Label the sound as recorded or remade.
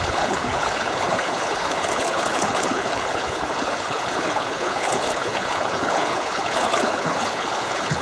remade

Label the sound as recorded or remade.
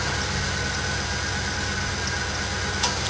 recorded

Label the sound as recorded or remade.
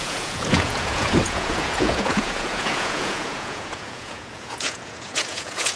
remade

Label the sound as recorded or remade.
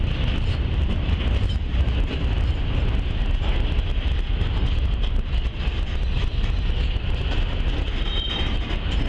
recorded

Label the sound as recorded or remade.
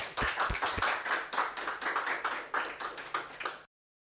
recorded